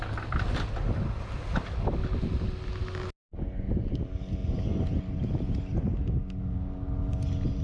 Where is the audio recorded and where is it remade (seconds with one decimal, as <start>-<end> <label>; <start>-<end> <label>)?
0.0-4.4 recorded; 4.4-5.0 remade; 5.0-7.6 recorded